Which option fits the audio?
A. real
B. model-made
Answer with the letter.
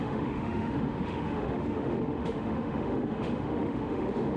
B